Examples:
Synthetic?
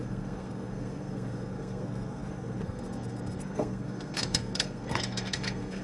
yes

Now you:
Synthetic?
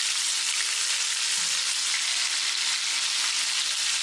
no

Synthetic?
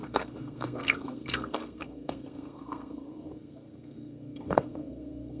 yes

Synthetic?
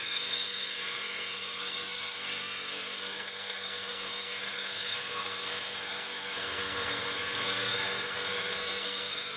yes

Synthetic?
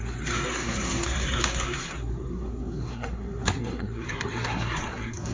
yes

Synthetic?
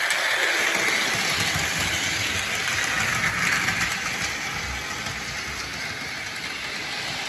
no